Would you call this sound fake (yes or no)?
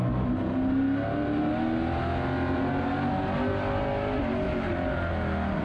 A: no